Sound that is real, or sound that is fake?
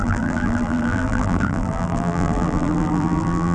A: fake